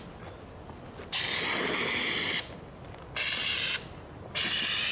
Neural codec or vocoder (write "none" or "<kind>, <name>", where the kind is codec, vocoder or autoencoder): none